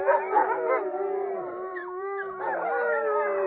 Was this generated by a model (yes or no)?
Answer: yes